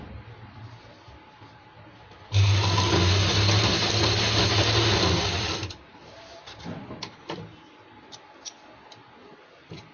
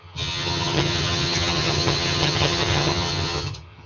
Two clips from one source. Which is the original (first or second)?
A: first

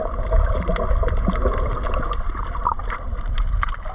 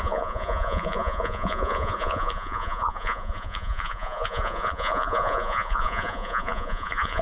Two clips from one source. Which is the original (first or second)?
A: first